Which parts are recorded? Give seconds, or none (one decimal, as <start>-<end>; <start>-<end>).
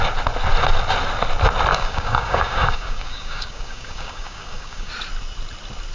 0.0-1.7; 4.9-5.9